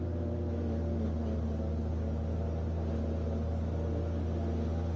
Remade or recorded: recorded